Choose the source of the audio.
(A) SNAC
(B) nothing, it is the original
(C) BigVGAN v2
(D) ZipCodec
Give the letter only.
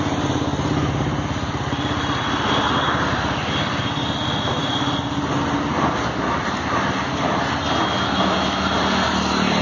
B